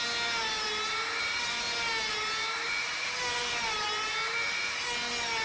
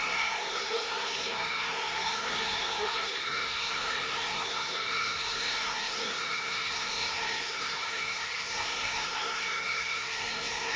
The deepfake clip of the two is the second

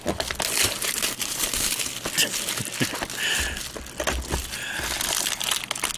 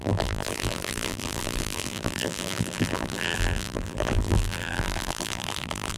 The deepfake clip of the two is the second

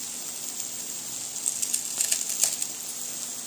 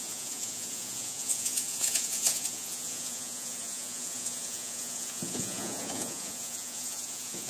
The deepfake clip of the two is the second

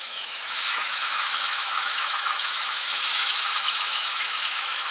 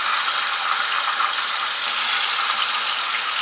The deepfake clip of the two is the first